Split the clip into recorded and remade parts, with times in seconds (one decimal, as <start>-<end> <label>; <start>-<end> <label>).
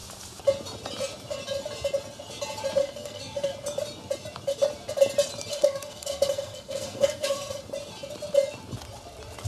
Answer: 0.0-2.8 recorded; 2.8-3.5 remade; 3.5-5.5 recorded; 5.5-7.6 remade; 7.6-9.5 recorded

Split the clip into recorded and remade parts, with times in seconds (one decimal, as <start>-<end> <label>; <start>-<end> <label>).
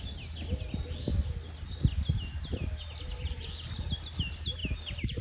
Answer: 0.0-5.2 recorded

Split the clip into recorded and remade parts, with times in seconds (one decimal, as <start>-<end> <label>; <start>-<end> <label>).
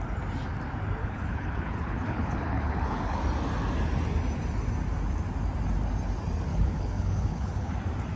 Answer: 0.0-1.0 recorded; 1.0-3.2 remade; 3.2-6.5 recorded; 6.5-7.7 remade; 7.7-8.2 recorded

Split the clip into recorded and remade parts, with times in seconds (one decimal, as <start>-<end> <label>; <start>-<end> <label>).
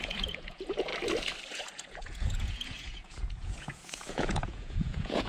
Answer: 0.0-0.9 remade; 0.9-1.5 recorded; 1.5-5.3 remade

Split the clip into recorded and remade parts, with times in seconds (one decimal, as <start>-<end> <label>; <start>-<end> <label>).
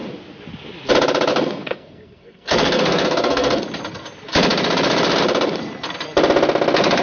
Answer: 0.0-1.3 recorded; 1.3-3.6 remade; 3.6-7.0 recorded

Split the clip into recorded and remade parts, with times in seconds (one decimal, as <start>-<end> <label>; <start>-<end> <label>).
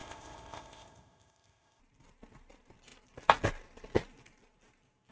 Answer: 0.0-1.8 remade; 1.8-5.1 recorded